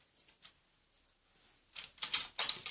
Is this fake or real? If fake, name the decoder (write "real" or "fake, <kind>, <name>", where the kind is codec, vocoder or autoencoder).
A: real